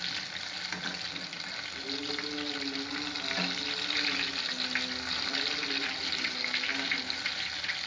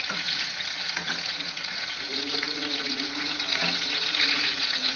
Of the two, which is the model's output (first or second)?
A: second